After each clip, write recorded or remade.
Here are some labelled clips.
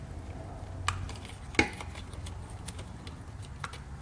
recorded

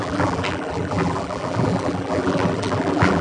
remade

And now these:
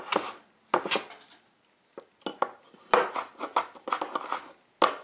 recorded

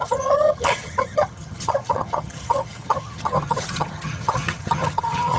remade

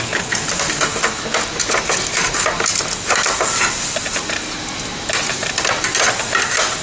recorded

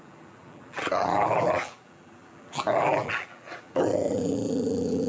remade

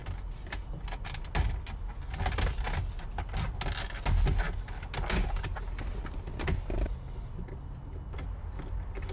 recorded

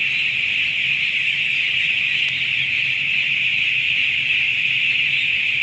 recorded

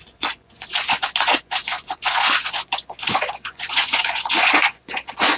remade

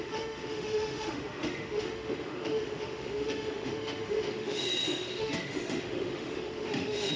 remade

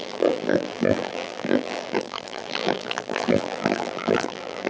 remade